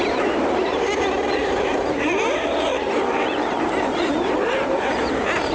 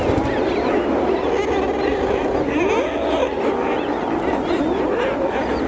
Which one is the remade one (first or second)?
first